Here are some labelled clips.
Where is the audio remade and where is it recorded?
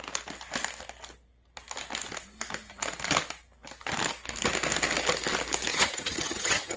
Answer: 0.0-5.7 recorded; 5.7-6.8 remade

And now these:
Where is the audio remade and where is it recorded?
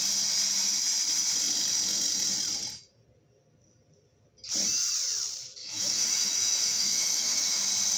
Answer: 0.0-5.6 recorded; 5.6-7.6 remade; 7.6-8.0 recorded